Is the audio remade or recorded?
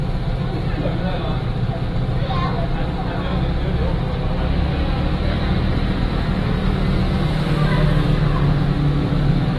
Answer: recorded